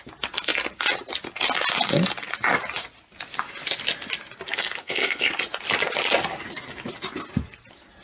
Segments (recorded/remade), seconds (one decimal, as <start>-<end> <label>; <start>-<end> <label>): 0.0-4.8 recorded; 4.8-5.3 remade; 5.3-8.0 recorded